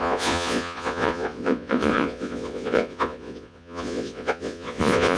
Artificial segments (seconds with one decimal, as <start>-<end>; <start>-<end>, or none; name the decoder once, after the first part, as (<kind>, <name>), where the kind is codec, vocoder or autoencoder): 0.0-5.2 (vocoder, Vocos)